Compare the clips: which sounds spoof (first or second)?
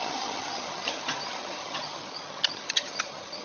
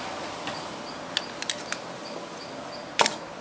first